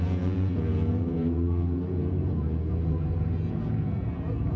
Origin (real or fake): fake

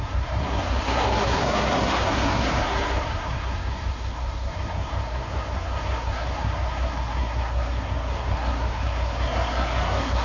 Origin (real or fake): fake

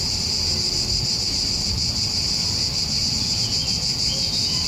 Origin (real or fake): real